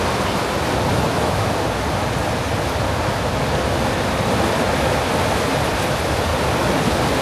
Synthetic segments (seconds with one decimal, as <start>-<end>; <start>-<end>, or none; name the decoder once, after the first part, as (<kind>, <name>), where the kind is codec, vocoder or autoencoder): 0.9-1.5 (autoencoder, DAC-VAE)